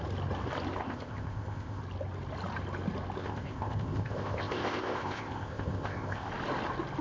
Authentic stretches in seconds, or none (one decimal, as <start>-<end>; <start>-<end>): 0.0-0.8; 1.8-3.2; 6.3-7.0